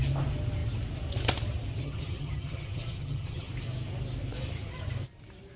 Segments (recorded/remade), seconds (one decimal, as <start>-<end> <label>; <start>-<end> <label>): 0.0-1.8 recorded; 1.8-3.5 remade; 3.5-5.6 recorded

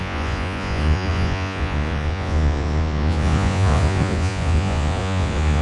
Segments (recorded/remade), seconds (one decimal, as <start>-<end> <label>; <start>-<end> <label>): 0.0-5.6 remade

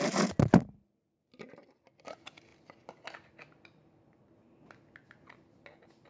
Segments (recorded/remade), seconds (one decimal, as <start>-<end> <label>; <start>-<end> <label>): 0.0-6.1 recorded

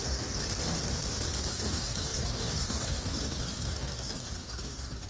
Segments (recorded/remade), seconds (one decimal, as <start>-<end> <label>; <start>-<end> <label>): 0.0-0.4 remade; 0.4-1.5 recorded; 1.5-5.1 remade

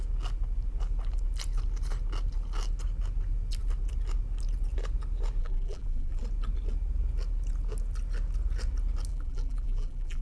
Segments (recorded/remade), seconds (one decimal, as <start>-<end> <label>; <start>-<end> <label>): 0.0-5.4 recorded; 5.4-6.2 remade; 6.2-9.1 recorded; 9.1-10.2 remade

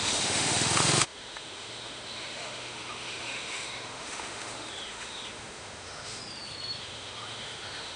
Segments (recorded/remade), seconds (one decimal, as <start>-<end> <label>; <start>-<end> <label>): 0.0-6.2 remade; 6.2-6.8 recorded; 6.8-8.0 remade

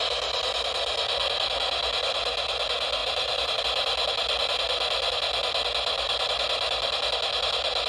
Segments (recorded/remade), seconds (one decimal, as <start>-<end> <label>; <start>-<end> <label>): 0.0-3.0 recorded; 3.0-3.6 remade; 3.6-7.9 recorded